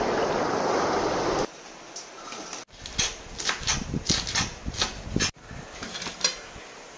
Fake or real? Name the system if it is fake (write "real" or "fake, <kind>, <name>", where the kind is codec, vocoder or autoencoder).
real